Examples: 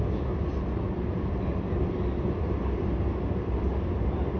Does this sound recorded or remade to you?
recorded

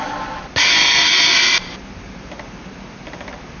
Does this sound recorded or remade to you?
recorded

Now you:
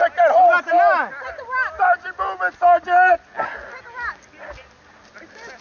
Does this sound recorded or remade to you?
recorded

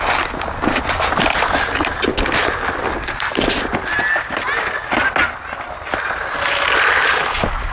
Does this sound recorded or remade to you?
recorded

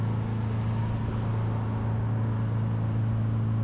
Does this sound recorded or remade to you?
recorded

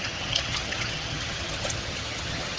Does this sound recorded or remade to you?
remade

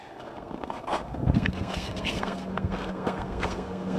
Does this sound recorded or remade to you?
remade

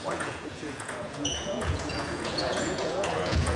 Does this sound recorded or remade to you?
remade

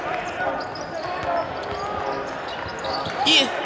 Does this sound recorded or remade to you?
recorded